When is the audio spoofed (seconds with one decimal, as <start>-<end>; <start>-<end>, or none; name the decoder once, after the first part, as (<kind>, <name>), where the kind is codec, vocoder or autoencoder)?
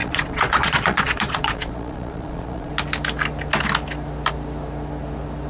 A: 0.0-2.7 (vocoder, Vocos)